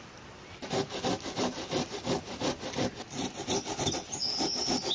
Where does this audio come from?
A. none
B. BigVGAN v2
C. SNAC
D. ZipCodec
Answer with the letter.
A